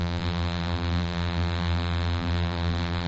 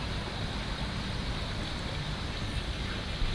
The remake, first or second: first